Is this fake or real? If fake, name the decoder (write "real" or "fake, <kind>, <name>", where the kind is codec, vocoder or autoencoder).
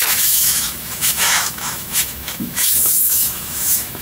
fake, autoencoder, DAC-VAE